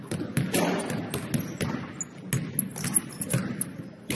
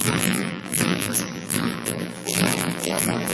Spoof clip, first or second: second